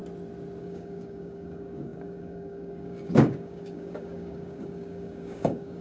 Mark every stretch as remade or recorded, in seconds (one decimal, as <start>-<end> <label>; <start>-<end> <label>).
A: 0.0-0.6 recorded; 0.6-5.8 remade